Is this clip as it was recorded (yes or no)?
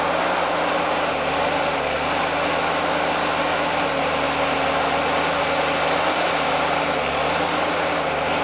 yes